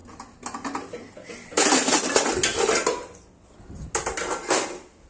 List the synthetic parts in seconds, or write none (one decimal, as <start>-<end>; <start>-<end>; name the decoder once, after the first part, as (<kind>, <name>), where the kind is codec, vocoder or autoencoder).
none